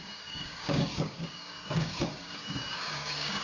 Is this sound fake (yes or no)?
yes